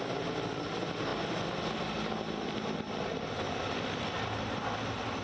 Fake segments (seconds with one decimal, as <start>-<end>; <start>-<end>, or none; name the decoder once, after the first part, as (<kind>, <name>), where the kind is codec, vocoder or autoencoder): none